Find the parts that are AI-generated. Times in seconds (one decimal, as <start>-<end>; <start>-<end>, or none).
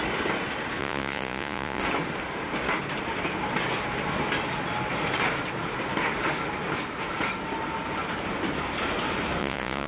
0.8-1.8; 9.4-9.9